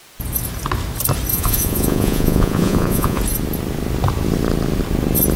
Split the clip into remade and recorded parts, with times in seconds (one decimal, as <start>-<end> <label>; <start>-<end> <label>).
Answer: 0.0-1.3 recorded; 1.3-3.2 remade; 3.2-5.4 recorded